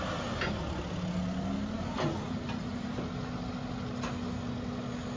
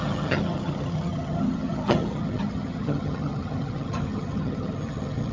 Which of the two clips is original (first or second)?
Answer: first